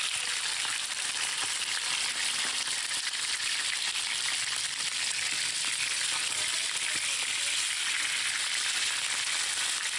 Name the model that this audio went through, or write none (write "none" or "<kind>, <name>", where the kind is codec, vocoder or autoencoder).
none